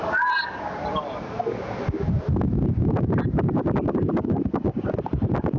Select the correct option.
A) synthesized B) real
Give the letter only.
B